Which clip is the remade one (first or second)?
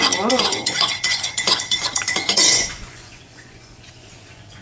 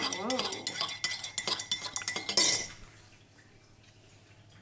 first